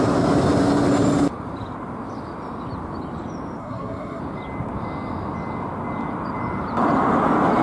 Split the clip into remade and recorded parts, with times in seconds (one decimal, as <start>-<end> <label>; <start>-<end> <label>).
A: 0.0-3.6 recorded; 3.6-4.2 remade; 4.2-7.6 recorded